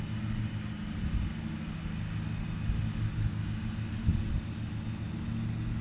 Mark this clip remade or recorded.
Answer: recorded